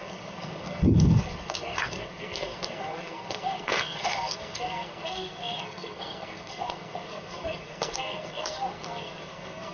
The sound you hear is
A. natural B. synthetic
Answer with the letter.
B